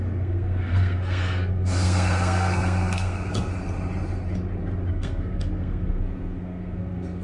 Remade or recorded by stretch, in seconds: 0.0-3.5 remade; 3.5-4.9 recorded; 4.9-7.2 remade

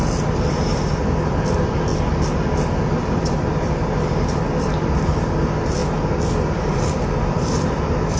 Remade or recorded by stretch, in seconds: 0.0-1.9 remade; 1.9-3.0 recorded; 3.0-5.8 remade; 5.8-6.5 recorded; 6.5-8.2 remade

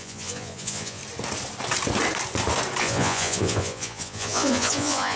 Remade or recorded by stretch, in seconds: 0.0-1.0 remade; 1.0-2.8 recorded; 2.8-5.2 remade

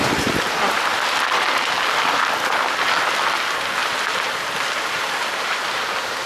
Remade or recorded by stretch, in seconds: 0.0-6.3 recorded

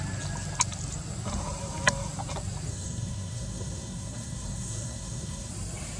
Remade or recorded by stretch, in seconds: 0.0-2.7 recorded; 2.7-5.5 remade; 5.5-6.0 recorded